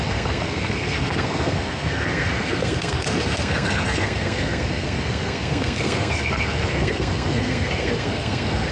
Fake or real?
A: fake